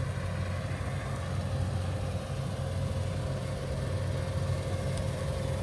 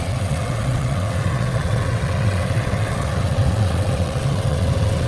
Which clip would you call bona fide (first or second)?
first